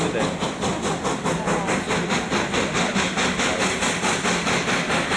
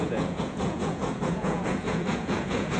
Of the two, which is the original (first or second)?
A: first